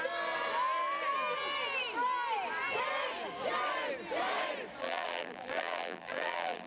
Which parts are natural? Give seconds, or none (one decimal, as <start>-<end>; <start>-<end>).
0.0-4.8